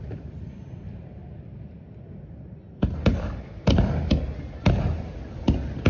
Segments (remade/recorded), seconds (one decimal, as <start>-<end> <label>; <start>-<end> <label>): 0.0-5.9 recorded